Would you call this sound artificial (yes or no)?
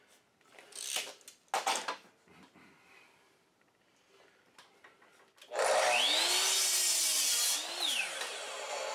no